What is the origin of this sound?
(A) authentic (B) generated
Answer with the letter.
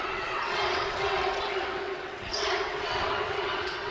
B